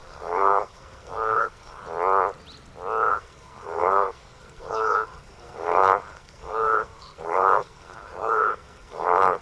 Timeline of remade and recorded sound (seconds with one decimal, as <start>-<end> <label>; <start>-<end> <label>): 0.0-1.8 remade; 1.8-3.1 recorded; 3.1-9.4 remade